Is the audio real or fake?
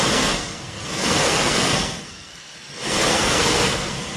fake